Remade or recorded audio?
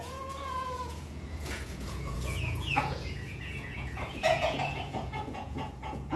remade